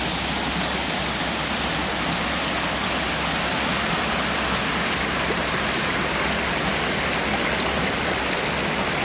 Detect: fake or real real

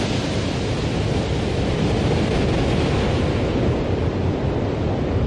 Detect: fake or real real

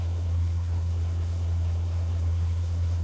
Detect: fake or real fake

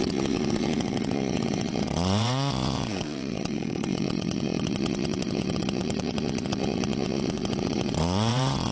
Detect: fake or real fake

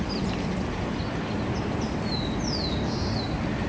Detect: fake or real real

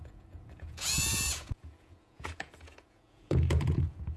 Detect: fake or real fake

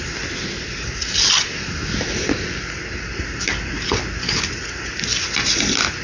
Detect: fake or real real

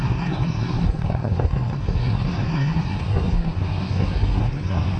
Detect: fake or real fake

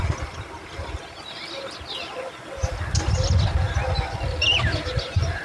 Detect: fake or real real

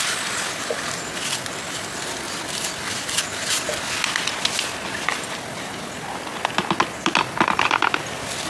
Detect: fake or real real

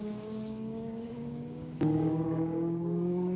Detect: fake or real fake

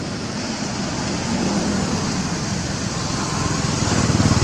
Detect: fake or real real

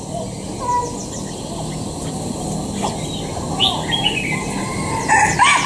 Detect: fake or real real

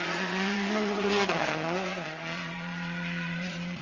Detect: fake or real fake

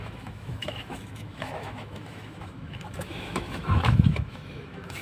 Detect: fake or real fake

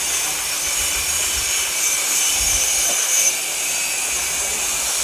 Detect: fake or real fake